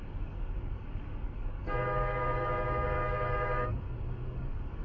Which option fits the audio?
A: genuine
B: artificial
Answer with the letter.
B